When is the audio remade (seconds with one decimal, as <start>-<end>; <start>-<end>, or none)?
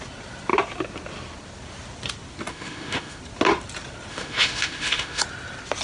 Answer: 2.5-3.2; 4.1-5.2